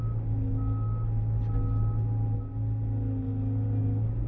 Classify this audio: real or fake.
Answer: real